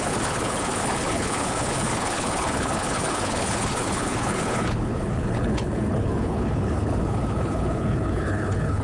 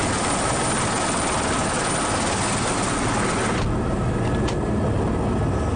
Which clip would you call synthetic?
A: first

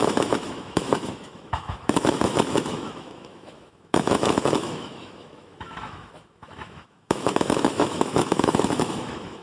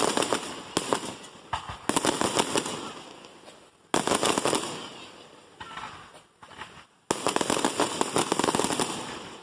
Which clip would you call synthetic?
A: first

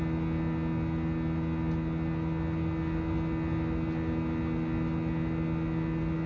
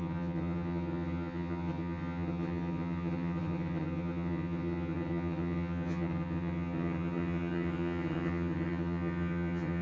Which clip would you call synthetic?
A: second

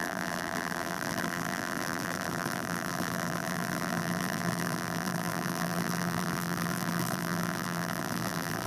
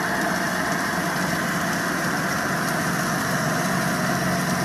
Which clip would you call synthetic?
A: first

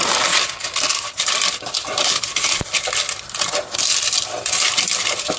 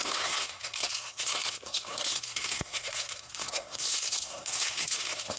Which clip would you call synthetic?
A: second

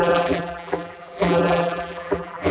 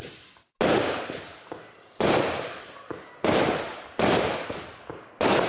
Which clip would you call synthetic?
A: first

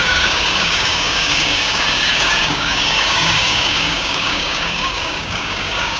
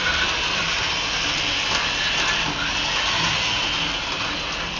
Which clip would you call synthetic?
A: first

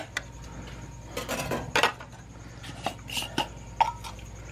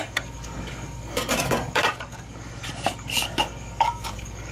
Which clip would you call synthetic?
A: second